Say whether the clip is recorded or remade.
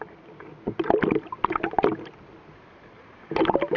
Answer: recorded